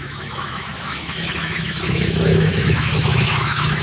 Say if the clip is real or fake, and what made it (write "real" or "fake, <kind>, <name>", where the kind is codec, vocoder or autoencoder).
fake, autoencoder, DAC-VAE